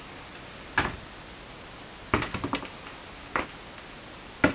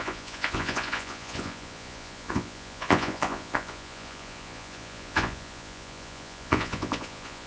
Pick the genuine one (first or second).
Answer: first